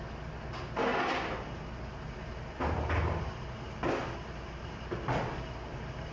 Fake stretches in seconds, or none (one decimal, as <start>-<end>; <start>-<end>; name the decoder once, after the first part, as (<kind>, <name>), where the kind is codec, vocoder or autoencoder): none